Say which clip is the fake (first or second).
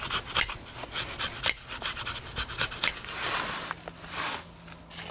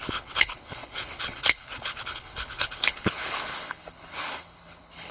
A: second